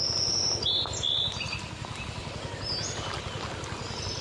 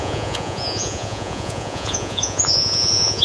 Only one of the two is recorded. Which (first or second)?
first